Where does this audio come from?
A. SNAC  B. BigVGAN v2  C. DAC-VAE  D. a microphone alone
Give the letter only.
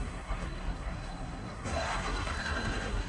A